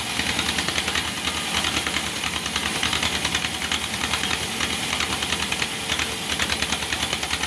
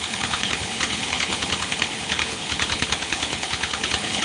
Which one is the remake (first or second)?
second